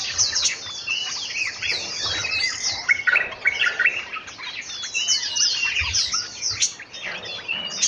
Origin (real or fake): real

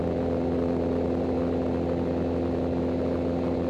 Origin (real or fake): real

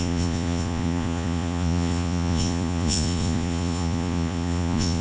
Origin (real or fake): fake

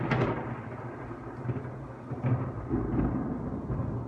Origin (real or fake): real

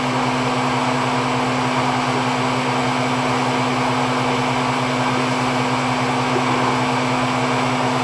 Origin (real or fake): real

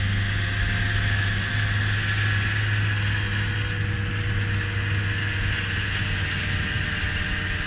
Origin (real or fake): real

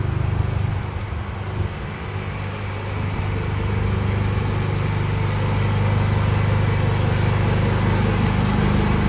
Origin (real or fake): real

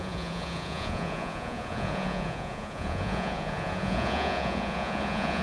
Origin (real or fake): fake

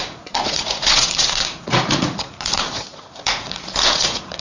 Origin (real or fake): fake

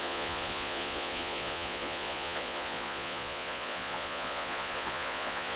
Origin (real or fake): fake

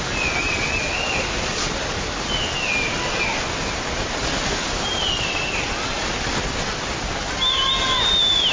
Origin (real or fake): real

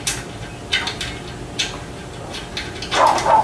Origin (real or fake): real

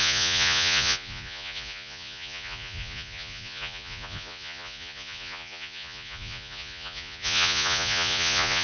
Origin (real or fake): fake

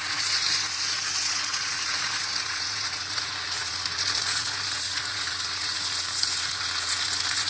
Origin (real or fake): fake